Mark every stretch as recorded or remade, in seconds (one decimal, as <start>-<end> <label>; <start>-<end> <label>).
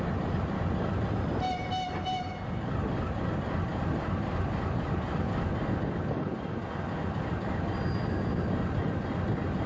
0.0-9.7 recorded